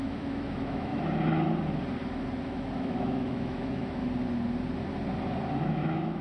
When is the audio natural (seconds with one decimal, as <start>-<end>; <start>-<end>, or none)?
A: 0.9-2.4; 4.0-5.6